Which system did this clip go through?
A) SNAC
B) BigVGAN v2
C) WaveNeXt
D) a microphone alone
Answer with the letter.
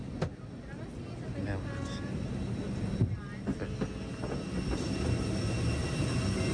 D